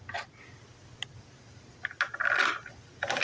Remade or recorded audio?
recorded